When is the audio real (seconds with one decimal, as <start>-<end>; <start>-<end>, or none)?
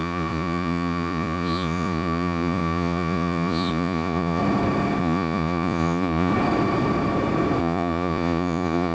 4.4-5.0; 6.3-7.6